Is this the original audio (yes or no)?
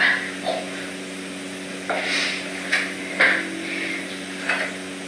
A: yes